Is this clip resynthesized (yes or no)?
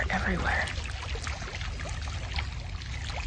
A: no